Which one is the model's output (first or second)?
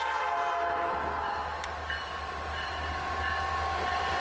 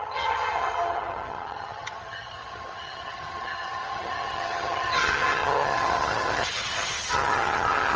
second